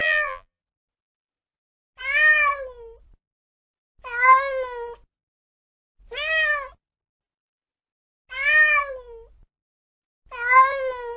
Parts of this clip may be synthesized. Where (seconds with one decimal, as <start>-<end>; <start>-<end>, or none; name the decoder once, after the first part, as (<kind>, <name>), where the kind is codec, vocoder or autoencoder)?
0.0-0.6 (vocoder, BigVGAN v2)